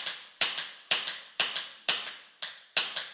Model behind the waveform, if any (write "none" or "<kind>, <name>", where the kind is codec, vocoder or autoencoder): none